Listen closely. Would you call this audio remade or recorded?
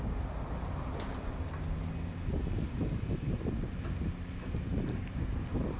recorded